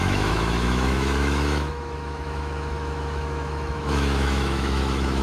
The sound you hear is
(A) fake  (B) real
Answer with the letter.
A